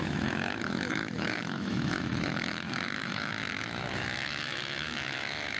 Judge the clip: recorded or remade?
remade